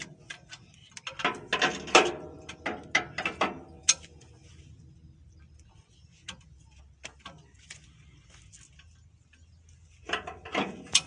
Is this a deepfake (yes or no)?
no